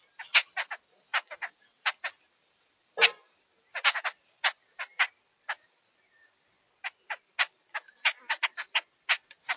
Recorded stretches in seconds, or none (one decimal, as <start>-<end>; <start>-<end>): 0.0-9.6